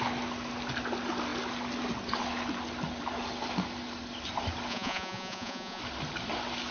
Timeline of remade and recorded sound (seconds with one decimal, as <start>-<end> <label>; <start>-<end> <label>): 0.0-4.7 recorded; 4.7-5.8 remade; 5.8-6.7 recorded